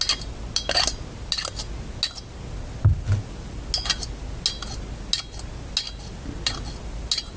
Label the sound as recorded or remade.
recorded